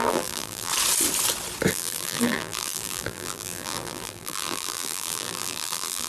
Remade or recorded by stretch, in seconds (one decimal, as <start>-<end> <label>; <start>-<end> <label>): 0.0-0.7 remade; 0.7-1.7 recorded; 1.7-6.1 remade